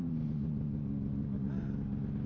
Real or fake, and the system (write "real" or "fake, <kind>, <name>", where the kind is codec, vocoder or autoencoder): real